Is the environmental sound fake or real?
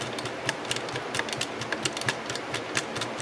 real